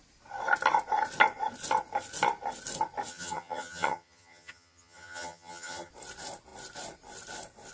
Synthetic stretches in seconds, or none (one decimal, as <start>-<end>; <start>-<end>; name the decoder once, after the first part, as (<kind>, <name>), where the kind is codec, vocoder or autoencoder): 3.1-5.9 (vocoder, HiFi-GAN)